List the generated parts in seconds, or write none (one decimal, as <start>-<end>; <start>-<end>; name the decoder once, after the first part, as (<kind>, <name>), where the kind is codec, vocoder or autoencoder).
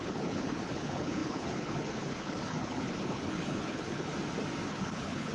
0.0-4.1 (codec, HILCodec); 4.7-5.3